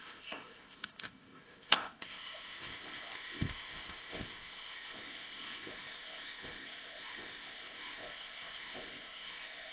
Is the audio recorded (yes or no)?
no